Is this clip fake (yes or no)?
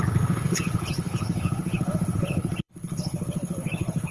yes